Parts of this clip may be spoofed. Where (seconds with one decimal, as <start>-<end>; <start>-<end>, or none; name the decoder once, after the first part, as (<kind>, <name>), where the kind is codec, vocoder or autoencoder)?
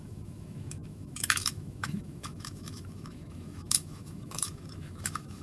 0.0-5.4 (autoencoder, DAC-VAE)